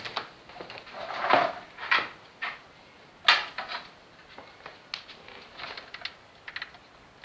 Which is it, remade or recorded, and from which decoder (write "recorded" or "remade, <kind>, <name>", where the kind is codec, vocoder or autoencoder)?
recorded